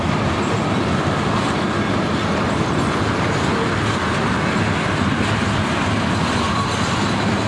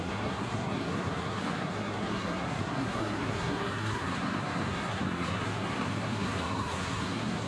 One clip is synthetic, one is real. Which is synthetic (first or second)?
second